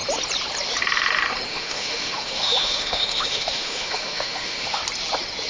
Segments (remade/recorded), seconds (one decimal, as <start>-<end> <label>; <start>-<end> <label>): 0.0-1.5 recorded; 1.5-4.8 remade; 4.8-5.5 recorded